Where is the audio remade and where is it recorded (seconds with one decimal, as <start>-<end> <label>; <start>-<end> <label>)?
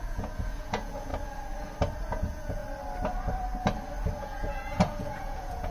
0.0-1.1 remade; 1.1-2.0 recorded; 2.0-2.6 remade; 2.6-4.2 recorded; 4.2-5.7 remade